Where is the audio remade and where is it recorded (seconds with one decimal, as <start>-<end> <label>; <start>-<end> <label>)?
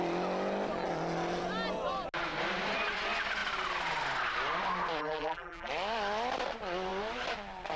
0.0-5.0 recorded; 5.0-5.7 remade; 5.7-7.8 recorded